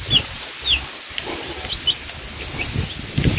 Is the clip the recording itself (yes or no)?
yes